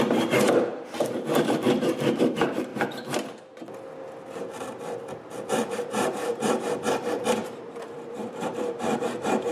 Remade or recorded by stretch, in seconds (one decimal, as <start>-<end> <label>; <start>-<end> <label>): 0.0-2.7 remade; 2.7-5.7 recorded; 5.7-9.5 remade